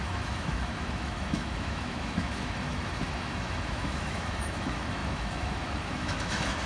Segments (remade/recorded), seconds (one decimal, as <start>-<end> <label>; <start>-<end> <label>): 0.0-6.7 remade